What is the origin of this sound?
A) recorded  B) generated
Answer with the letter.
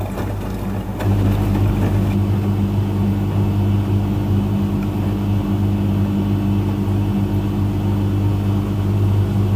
A